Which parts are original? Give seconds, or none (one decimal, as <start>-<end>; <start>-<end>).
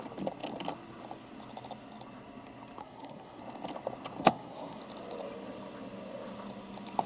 0.0-2.8; 3.4-4.2; 4.8-7.1